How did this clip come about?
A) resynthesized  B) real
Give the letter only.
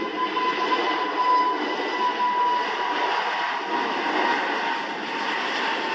B